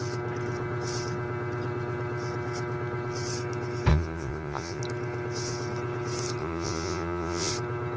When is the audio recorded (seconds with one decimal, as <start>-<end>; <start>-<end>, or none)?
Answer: 0.0-3.9; 4.8-6.4; 7.5-8.0